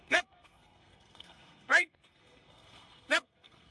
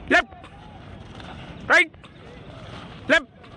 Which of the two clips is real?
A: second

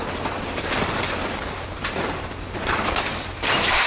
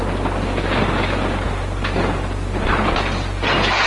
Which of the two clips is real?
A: second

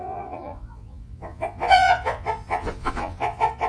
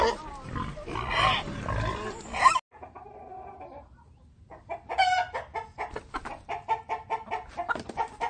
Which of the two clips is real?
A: second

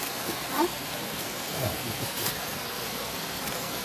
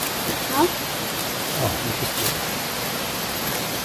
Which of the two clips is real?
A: second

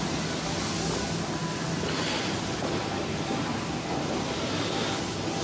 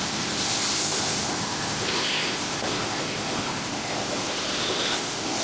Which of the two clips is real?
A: first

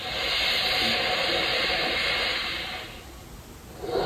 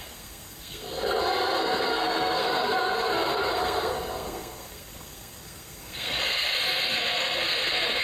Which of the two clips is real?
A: first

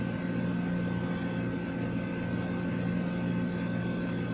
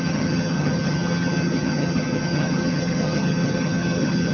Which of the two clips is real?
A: first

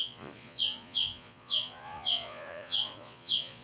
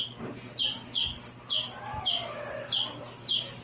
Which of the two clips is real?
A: second